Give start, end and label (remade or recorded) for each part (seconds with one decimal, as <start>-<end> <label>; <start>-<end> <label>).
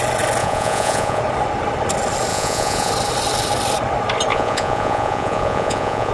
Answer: 0.0-0.4 recorded; 0.4-1.2 remade; 1.2-2.3 recorded; 2.3-2.9 remade; 2.9-4.3 recorded; 4.3-6.1 remade